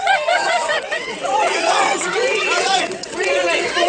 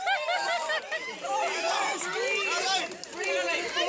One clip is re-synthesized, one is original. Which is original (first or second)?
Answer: second